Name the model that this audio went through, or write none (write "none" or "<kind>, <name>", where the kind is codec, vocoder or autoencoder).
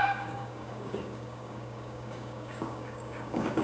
codec, DAC